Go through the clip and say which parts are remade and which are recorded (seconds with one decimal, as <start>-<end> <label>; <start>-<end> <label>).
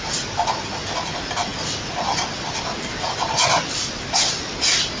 0.0-5.0 recorded